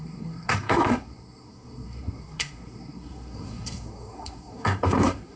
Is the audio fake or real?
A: fake